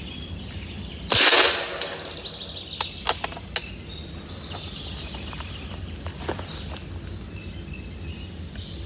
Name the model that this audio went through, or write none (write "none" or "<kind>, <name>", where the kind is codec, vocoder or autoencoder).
none